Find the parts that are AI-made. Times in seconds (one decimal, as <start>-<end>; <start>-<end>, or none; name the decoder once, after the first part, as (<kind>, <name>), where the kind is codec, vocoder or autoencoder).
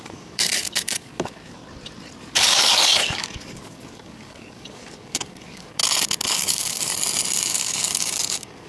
0.0-1.6 (codec, DAC); 2.2-5.8; 6.3-6.9; 7.5-8.7